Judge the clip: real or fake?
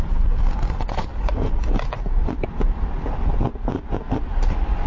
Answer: real